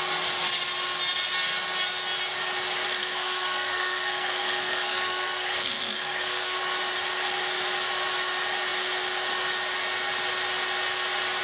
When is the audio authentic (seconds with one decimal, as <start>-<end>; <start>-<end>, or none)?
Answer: 0.0-3.0; 6.6-11.4